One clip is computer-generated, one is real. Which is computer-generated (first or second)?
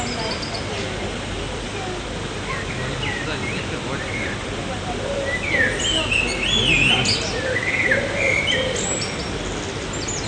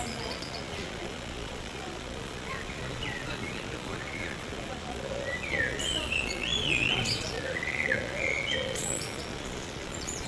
second